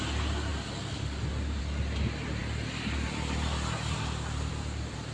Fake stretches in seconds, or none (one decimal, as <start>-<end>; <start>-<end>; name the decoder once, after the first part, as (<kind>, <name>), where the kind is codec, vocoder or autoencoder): none